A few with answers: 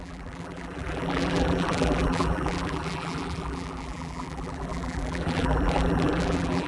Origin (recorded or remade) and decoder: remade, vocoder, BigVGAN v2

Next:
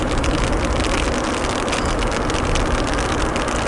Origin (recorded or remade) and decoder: recorded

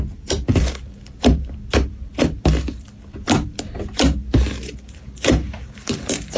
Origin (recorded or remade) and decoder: remade, vocoder, BigVGAN v2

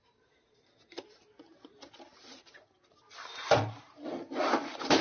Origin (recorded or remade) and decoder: remade, vocoder, BigVGAN v2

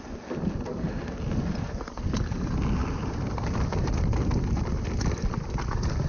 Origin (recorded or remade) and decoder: recorded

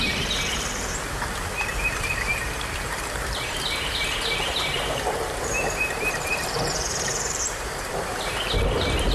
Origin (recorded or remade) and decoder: remade, vocoder, BigVGAN v2